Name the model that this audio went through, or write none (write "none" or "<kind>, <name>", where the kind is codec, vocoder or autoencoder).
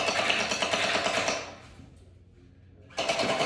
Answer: none